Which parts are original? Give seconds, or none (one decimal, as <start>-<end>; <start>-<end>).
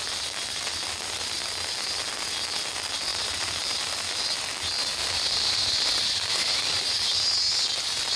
0.0-3.1; 4.1-5.0; 6.8-8.2